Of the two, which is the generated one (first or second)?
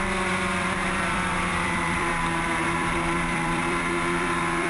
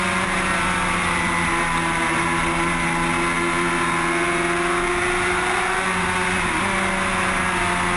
first